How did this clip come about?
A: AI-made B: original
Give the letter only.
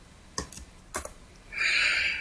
B